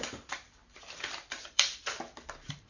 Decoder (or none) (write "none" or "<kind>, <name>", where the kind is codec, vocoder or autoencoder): vocoder, BigVGAN v2